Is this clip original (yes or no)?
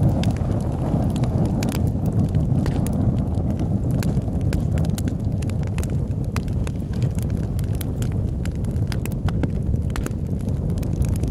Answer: yes